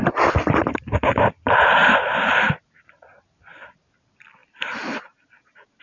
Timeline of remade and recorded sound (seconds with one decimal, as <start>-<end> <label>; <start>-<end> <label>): 0.0-5.8 recorded

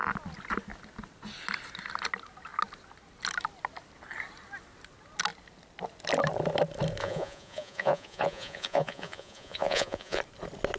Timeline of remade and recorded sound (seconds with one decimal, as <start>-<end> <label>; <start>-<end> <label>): 0.0-7.0 recorded; 7.0-10.2 remade; 10.2-10.8 recorded

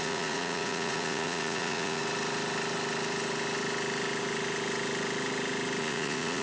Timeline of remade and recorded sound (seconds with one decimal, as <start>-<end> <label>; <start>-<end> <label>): 0.0-2.0 remade; 2.0-5.8 recorded; 5.8-6.4 remade

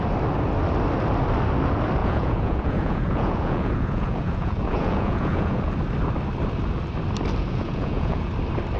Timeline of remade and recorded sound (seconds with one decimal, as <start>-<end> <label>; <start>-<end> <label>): 0.0-2.0 recorded; 2.0-5.7 remade; 5.7-7.4 recorded; 7.4-8.3 remade; 8.3-8.8 recorded